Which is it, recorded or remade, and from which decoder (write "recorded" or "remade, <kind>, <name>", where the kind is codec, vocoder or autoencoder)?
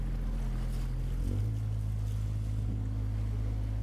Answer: recorded